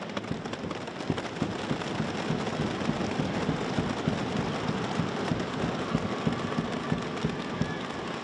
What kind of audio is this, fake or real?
fake